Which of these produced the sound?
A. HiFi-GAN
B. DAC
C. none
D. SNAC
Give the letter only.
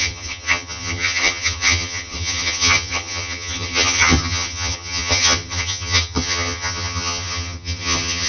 A